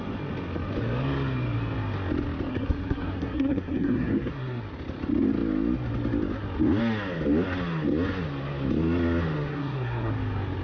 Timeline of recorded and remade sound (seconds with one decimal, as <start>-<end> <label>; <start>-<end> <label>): 0.0-2.5 recorded; 2.5-4.6 remade; 4.6-9.5 recorded; 9.5-10.1 remade; 10.1-10.6 recorded